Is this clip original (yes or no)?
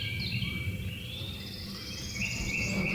yes